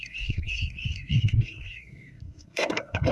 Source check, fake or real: fake